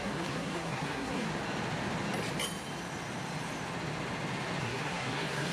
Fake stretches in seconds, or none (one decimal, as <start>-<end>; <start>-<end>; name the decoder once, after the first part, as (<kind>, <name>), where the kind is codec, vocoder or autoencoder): 0.0-1.3 (codec, SNAC); 4.6-5.5